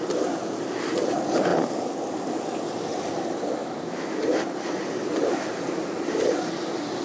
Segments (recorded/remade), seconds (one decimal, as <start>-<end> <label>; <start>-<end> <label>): 0.0-3.6 recorded; 3.6-4.2 remade; 4.2-7.0 recorded